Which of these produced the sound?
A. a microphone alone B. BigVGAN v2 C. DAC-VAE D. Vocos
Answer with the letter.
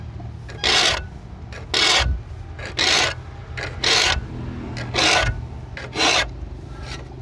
A